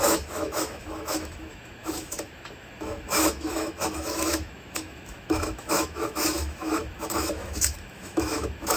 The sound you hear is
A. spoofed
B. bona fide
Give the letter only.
A